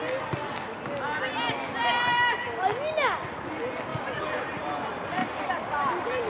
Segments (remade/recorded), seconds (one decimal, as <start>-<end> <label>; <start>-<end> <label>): 0.0-3.9 recorded; 3.9-4.7 remade; 4.7-5.2 recorded; 5.2-6.3 remade

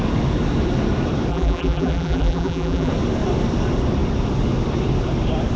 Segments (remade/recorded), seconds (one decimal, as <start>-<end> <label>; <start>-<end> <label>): 0.0-1.3 recorded; 1.3-2.9 remade; 2.9-5.6 recorded

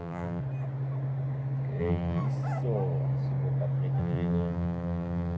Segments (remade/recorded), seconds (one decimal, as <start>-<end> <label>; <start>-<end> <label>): 0.0-0.4 remade; 0.4-1.8 recorded; 1.8-2.2 remade; 2.2-4.0 recorded; 4.0-5.4 remade

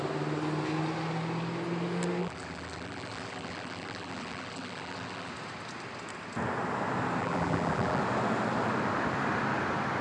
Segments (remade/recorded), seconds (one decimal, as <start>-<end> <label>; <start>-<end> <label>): 0.0-2.2 recorded; 2.2-5.3 remade; 5.3-7.2 recorded; 7.2-8.0 remade; 8.0-10.0 recorded

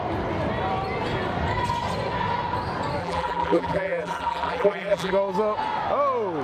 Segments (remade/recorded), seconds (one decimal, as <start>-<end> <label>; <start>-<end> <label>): 0.0-3.0 recorded; 3.0-5.1 remade; 5.1-6.4 recorded

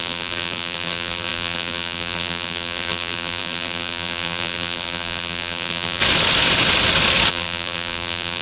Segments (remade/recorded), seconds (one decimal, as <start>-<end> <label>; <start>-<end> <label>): 0.0-6.0 remade; 6.0-7.3 recorded; 7.3-8.4 remade

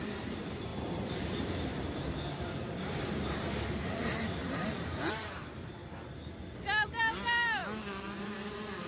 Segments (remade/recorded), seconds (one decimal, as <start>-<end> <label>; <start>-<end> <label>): 0.0-7.6 remade; 7.6-8.2 recorded; 8.2-8.9 remade

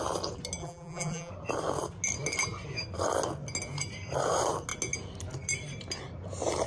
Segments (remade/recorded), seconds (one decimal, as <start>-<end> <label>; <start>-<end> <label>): 0.0-0.6 recorded; 0.6-1.3 remade; 1.3-6.7 recorded